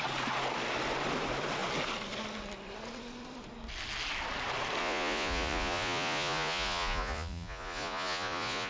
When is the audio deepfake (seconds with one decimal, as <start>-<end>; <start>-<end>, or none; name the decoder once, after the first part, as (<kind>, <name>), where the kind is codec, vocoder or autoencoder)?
4.8-8.7 (vocoder, Vocos)